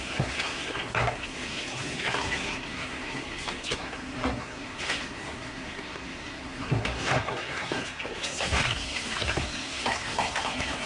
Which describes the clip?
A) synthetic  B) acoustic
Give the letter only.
A